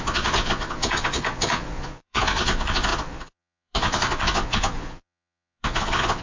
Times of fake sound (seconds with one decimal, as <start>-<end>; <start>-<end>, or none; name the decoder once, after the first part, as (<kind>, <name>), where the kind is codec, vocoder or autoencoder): 0.0-6.2 (vocoder, Vocos)